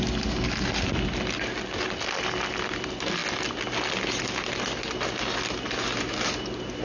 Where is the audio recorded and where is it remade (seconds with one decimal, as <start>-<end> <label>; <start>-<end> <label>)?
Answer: 0.0-6.8 recorded